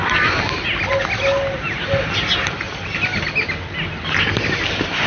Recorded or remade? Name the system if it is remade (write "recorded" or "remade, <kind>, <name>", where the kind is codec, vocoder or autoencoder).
recorded